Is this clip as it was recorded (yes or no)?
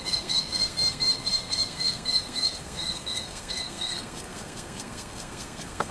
no